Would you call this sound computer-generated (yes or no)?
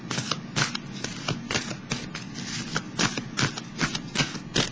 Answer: no